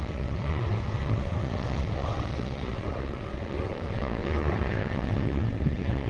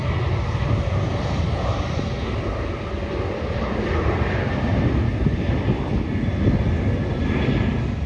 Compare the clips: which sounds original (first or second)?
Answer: second